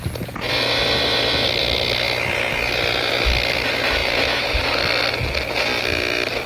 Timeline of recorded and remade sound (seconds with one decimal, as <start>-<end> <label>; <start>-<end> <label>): 0.0-4.0 recorded; 4.0-4.6 remade; 4.6-6.5 recorded